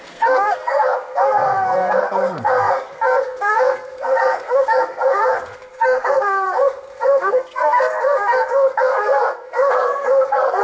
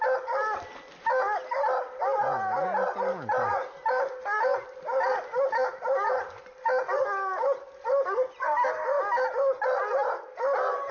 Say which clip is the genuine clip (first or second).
second